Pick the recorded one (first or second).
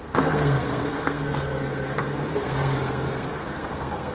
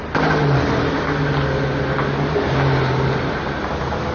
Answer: second